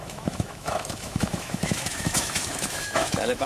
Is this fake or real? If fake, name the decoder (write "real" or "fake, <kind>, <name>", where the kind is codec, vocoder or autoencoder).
fake, autoencoder, DAC-VAE